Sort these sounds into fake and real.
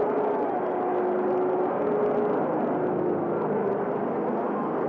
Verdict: real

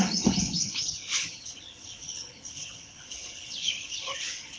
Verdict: fake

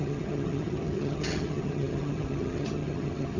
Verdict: fake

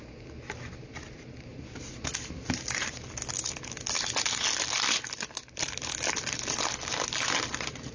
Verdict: real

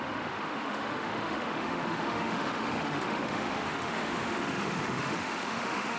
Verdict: fake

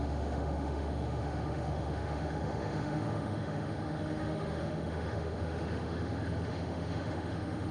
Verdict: fake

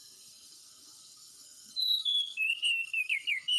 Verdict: fake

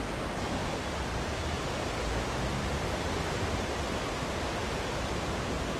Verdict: real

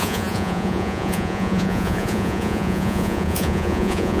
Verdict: fake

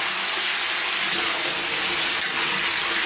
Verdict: real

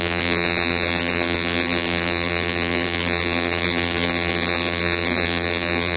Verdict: fake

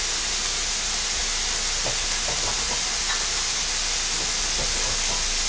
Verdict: real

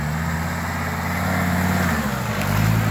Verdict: real